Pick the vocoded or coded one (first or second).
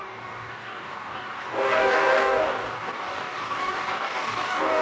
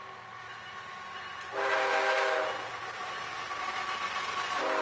first